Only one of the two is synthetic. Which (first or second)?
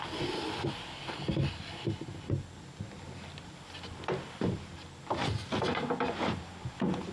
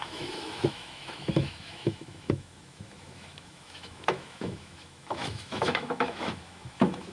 second